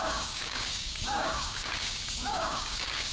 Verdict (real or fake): fake